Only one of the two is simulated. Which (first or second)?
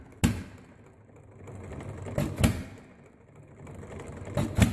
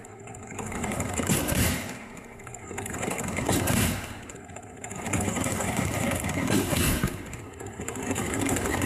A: second